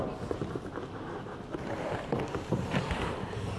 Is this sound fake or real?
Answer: real